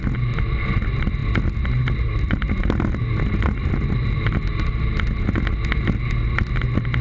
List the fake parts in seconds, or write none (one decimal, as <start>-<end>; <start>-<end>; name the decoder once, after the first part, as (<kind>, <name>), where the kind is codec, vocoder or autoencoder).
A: none